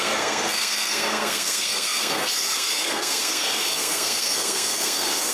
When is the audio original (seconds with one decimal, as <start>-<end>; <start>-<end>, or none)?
none